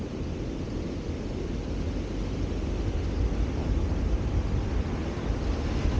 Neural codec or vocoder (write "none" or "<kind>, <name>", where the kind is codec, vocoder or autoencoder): none